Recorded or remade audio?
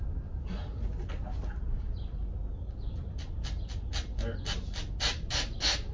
recorded